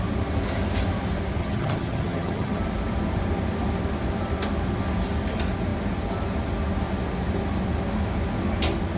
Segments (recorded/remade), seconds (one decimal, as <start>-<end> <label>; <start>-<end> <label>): 0.0-1.4 recorded; 1.4-2.6 remade; 2.6-9.0 recorded